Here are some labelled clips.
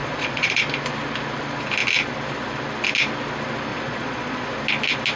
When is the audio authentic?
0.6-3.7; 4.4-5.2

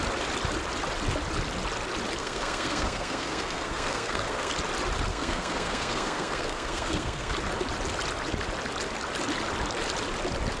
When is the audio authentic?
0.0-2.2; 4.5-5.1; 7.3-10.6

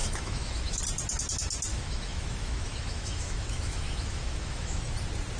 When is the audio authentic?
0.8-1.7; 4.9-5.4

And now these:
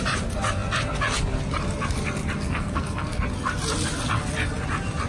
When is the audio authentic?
0.0-2.4; 3.2-5.1